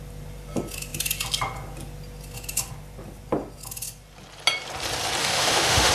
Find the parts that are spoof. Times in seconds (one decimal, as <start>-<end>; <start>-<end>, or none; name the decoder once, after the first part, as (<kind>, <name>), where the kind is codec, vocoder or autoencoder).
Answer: 5.2-5.9 (autoencoder, DAC-VAE)